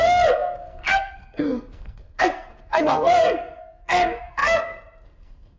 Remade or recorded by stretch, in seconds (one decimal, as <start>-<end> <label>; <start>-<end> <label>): 0.0-5.6 remade